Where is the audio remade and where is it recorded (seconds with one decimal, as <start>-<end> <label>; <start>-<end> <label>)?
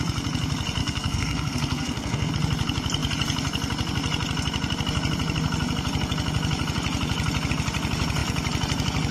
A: 0.0-0.8 recorded; 0.8-2.3 remade; 2.3-9.1 recorded